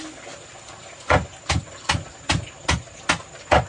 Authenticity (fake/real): real